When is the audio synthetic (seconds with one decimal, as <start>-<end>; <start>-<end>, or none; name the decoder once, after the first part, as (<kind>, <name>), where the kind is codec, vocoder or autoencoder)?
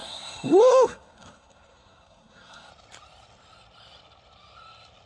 0.0-2.7 (codec, SNAC)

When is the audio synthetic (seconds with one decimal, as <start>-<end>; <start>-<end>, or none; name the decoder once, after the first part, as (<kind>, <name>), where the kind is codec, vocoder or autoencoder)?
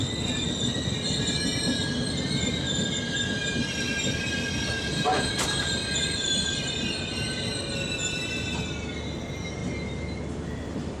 3.4-8.7 (vocoder, BigVGAN v2); 9.6-11.0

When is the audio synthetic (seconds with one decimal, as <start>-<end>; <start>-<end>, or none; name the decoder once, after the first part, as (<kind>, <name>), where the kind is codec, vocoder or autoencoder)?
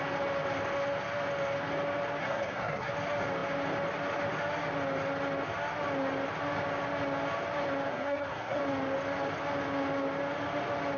2.2-2.9 (codec, SNAC); 7.9-8.6